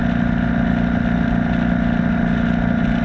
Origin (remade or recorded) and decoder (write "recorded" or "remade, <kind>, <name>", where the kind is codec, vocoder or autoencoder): recorded